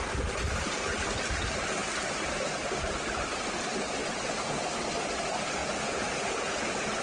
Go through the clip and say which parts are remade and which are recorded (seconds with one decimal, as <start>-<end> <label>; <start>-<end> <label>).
0.0-4.0 recorded; 4.0-4.6 remade; 4.6-5.6 recorded; 5.6-6.6 remade; 6.6-7.0 recorded